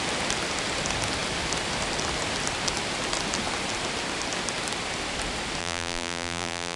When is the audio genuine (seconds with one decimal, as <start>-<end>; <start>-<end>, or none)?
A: 0.0-5.6

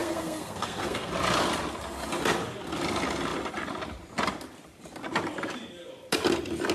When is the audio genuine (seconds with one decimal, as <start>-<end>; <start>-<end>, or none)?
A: 1.1-6.7

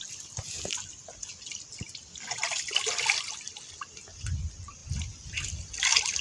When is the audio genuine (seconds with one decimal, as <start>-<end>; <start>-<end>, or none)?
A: 0.0-6.2

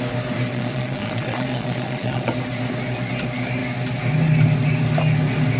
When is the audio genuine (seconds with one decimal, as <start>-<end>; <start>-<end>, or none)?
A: 0.0-0.5; 2.3-5.6

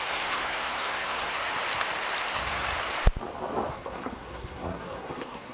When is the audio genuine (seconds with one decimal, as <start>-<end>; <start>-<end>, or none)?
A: 1.5-2.3; 2.7-3.7

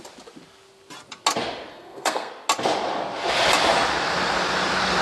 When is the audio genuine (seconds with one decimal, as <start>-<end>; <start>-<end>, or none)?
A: 0.0-1.7; 2.3-5.0

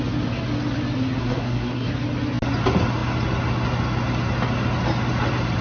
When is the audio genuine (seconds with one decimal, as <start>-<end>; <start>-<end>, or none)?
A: 0.0-1.2; 1.9-5.6